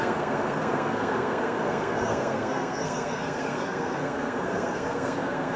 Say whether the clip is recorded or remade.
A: remade